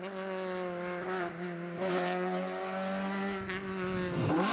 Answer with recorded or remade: recorded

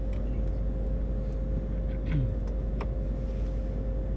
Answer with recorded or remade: recorded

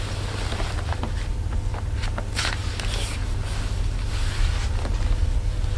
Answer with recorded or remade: recorded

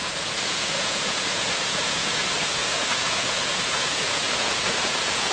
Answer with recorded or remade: remade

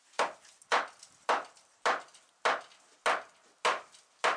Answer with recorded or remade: recorded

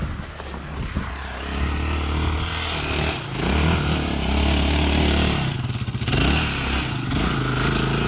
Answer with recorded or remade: recorded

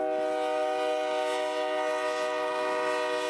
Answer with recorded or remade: recorded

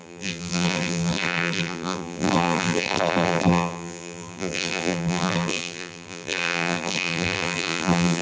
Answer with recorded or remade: remade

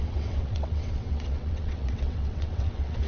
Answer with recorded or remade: remade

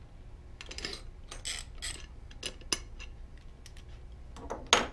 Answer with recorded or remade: recorded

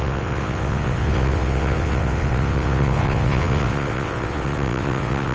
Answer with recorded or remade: remade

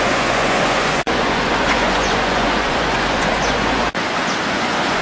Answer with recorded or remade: remade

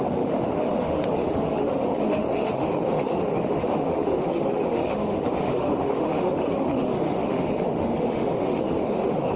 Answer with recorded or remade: remade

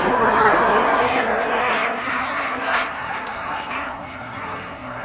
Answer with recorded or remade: remade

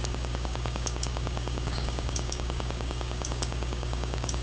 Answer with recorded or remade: remade